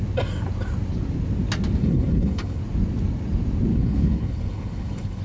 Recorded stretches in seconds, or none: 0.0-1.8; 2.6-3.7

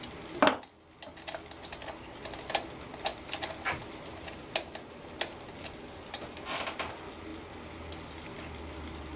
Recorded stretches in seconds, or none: 0.0-9.2